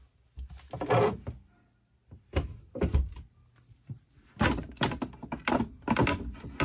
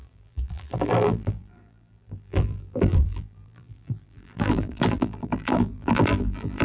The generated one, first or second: second